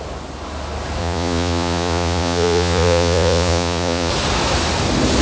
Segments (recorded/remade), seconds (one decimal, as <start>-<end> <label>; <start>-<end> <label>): 0.0-1.0 recorded; 1.0-4.1 remade; 4.1-5.2 recorded